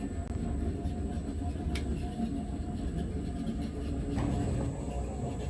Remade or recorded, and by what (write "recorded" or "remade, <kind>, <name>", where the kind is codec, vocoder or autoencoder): recorded